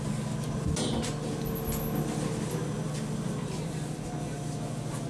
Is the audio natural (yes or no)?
yes